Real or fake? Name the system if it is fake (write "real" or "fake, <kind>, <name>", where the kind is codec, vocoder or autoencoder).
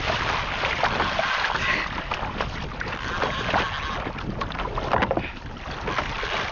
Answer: real